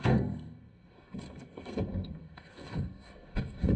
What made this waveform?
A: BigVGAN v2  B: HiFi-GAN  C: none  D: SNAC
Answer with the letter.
D